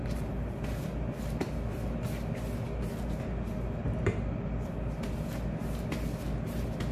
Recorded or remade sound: recorded